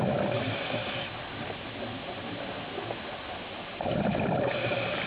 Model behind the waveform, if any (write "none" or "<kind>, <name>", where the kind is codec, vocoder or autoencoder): none